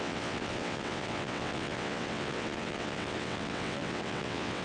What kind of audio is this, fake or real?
fake